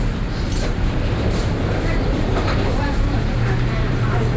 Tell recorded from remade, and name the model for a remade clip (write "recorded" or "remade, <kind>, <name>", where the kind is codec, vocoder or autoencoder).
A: remade, vocoder, BigVGAN v2